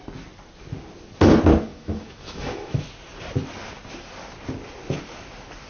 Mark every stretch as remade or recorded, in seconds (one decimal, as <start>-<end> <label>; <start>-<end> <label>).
0.0-1.7 recorded; 1.7-2.8 remade; 2.8-5.7 recorded